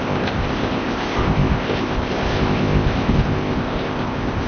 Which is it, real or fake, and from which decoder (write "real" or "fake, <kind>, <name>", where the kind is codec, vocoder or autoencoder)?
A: fake, codec, ZipCodec